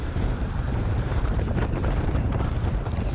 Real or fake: fake